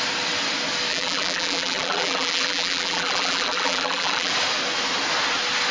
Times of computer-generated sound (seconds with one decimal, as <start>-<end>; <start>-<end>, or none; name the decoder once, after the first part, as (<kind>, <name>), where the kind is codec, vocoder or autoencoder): 0.9-4.3 (vocoder, BigVGAN v2)